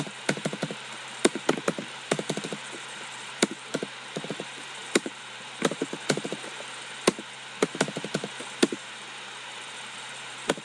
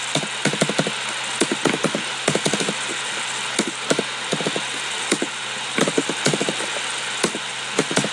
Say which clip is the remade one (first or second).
first